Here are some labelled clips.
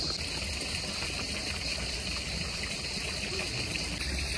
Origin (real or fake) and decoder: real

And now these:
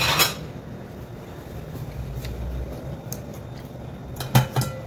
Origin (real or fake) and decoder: real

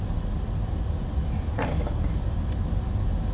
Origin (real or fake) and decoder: real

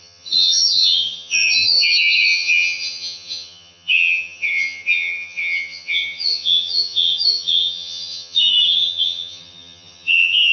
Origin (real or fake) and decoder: fake, vocoder, HiFi-GAN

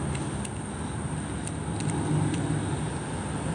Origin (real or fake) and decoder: real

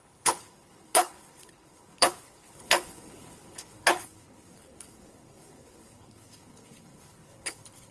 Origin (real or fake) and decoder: fake, codec, HILCodec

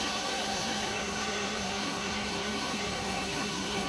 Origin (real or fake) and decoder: fake, codec, SNAC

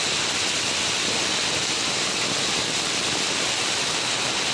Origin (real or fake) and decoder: real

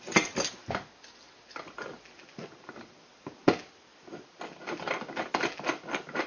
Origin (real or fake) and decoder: real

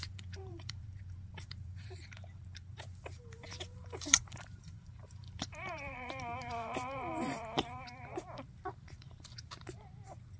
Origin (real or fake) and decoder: fake, vocoder, BigVGAN v2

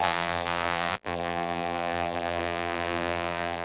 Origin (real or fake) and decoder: fake, vocoder, BigVGAN v2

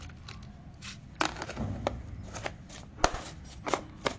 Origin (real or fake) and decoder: real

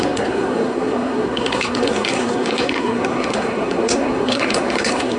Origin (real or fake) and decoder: fake, codec, SNAC